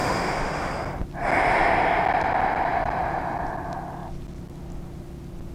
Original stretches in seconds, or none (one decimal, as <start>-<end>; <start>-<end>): 0.7-5.5